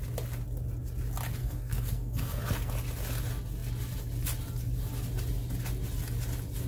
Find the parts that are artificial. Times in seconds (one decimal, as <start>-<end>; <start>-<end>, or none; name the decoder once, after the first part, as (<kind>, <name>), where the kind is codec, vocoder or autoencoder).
1.4-2.7 (codec, SNAC)